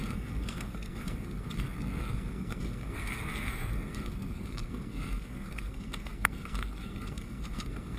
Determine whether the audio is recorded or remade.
remade